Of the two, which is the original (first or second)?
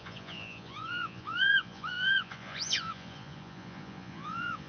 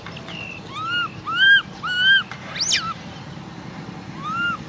second